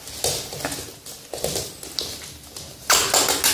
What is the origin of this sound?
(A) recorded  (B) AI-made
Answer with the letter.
A